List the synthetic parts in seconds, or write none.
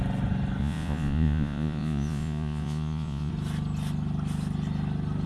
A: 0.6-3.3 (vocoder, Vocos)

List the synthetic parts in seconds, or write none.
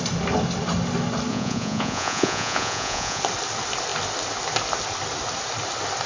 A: 1.3-3.2 (vocoder, Vocos)